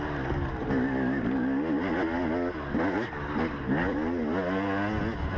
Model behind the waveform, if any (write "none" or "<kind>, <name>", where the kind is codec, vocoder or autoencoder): none